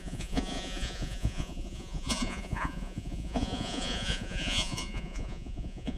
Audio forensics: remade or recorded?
remade